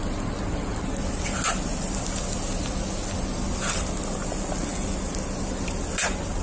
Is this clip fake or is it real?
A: real